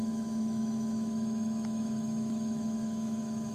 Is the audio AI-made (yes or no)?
yes